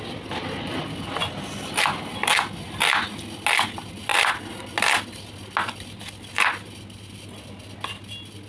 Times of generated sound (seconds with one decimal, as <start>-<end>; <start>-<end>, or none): none